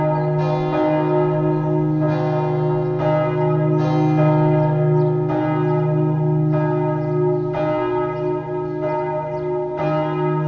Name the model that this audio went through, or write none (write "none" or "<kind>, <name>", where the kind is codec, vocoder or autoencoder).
none